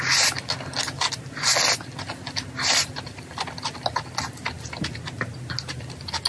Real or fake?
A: real